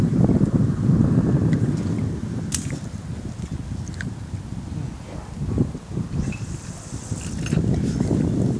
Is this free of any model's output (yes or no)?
yes